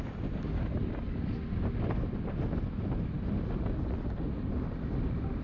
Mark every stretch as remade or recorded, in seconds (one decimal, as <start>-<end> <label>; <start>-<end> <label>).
0.0-5.4 recorded